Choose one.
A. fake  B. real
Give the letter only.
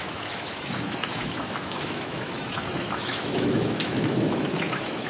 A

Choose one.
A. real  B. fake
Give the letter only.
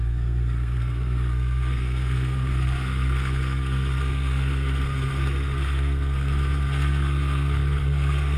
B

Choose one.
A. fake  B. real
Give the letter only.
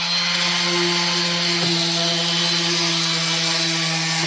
B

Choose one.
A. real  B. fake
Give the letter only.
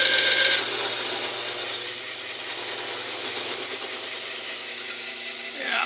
A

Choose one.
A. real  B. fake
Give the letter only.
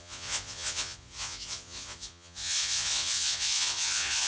B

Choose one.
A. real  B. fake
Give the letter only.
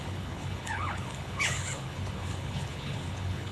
B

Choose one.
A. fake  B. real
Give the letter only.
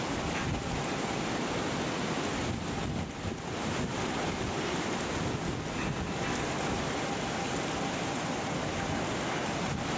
B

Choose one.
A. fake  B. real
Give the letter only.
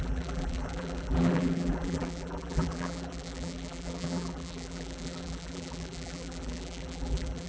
A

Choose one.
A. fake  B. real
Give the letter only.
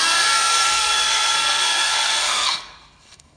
A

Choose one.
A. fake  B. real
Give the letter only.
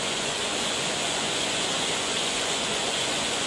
A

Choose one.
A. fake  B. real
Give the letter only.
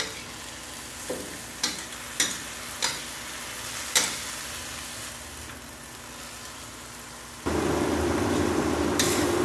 B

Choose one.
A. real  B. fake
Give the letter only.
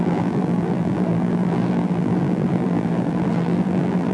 B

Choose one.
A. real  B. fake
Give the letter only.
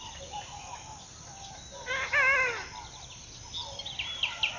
A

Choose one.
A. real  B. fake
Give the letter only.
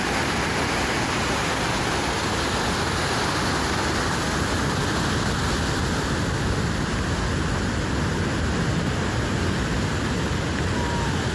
A